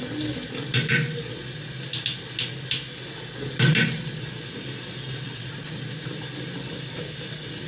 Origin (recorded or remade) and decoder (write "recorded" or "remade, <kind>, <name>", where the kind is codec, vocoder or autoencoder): recorded